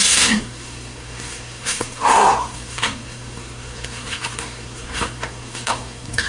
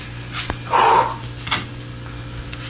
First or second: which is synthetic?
first